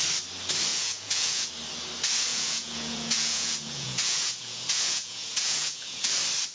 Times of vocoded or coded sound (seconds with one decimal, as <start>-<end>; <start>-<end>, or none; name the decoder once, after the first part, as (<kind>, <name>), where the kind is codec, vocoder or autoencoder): 0.7-1.5 (vocoder, Vocos); 2.3-6.1